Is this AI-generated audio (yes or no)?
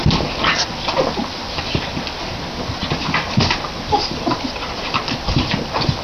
no